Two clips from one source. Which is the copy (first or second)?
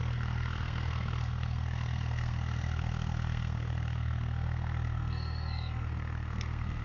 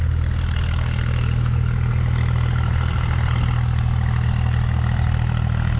first